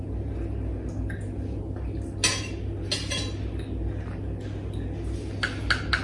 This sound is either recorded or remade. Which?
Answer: recorded